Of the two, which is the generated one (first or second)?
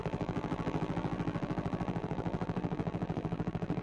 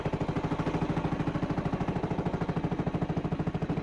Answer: first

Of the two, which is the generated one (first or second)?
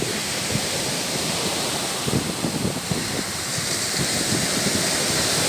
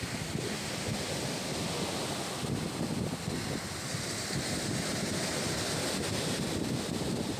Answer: first